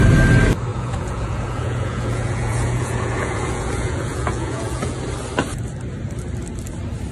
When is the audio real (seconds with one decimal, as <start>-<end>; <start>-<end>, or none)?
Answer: 0.0-0.7; 5.0-7.1